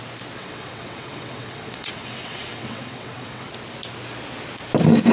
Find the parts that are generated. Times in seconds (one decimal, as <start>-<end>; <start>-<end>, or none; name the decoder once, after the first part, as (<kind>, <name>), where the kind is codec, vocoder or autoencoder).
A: 0.4-3.5 (vocoder, WaveNeXt)